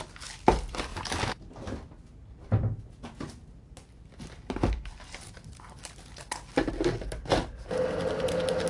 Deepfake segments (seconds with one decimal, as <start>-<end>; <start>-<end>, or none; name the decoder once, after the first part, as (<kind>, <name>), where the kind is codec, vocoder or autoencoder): none